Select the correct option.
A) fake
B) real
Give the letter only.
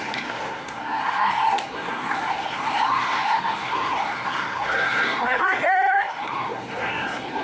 A